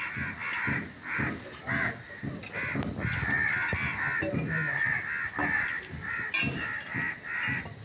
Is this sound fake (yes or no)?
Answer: no